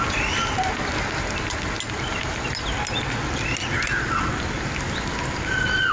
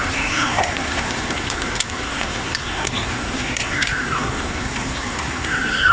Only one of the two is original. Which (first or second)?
first